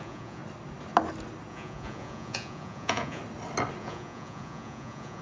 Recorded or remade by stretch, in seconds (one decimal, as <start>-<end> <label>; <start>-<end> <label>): 0.0-0.4 remade; 0.4-1.5 recorded; 1.5-3.2 remade; 3.2-3.8 recorded; 3.8-5.2 remade